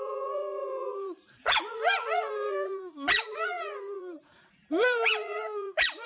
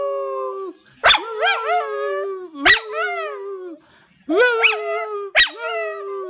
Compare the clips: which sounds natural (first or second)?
second